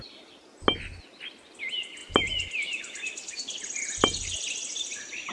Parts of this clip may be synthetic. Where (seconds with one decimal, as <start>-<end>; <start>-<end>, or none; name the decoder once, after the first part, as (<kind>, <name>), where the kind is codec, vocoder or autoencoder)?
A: none